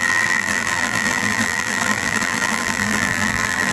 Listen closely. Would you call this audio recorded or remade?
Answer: remade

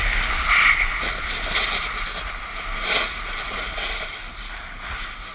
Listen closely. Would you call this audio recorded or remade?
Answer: recorded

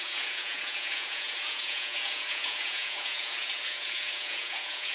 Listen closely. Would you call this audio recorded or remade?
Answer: remade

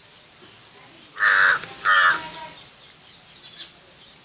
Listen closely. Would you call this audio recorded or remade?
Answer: recorded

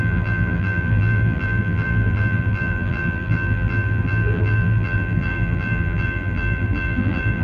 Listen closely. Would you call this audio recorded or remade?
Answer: remade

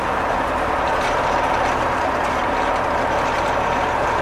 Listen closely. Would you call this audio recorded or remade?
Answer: remade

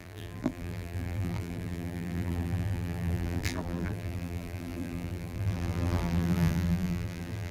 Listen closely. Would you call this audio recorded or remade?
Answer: remade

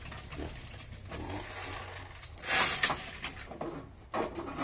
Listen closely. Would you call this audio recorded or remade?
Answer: recorded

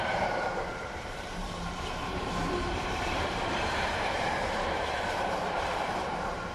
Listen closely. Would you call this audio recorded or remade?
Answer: remade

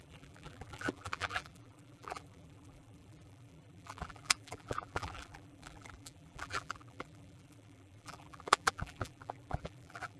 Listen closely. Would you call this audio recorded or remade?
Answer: remade